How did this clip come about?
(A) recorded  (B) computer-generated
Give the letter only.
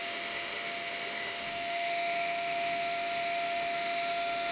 B